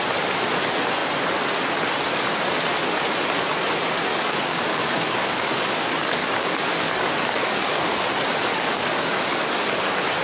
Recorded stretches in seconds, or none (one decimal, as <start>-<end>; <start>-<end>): 0.0-4.1; 8.0-8.5; 9.5-10.2